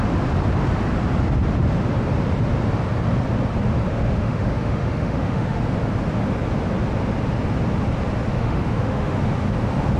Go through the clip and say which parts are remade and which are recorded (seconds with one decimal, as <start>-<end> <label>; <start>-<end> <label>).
0.0-3.9 recorded; 3.9-5.6 remade; 5.6-8.4 recorded; 8.4-9.2 remade; 9.2-10.0 recorded